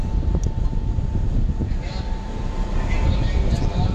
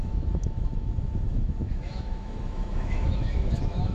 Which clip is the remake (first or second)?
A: second